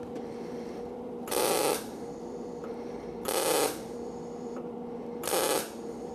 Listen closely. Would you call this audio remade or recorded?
remade